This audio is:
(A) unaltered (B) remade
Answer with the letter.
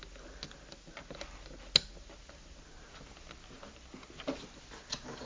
A